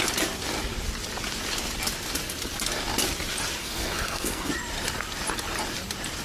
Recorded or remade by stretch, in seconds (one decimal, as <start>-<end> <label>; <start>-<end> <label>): 0.0-3.6 recorded; 3.6-4.5 remade; 4.5-6.2 recorded